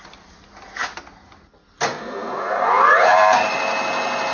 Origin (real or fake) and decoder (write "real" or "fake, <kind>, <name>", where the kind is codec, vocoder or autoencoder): real